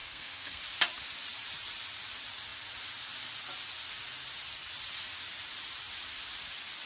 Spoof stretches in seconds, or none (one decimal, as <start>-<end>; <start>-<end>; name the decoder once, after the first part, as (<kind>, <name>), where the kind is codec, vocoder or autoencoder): 0.0-0.6 (codec, SNAC)